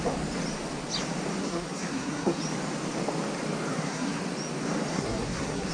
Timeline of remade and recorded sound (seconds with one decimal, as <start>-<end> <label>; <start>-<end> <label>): 0.0-1.4 recorded; 1.4-2.4 remade; 2.4-3.7 recorded; 3.7-4.2 remade; 4.2-4.9 recorded; 4.9-5.7 remade